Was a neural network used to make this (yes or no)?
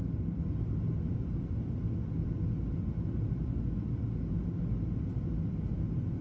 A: no